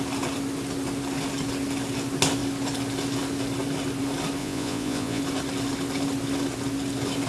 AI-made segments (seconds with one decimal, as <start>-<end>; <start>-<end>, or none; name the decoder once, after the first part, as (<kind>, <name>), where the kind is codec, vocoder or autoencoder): 4.4-5.2 (vocoder, Vocos)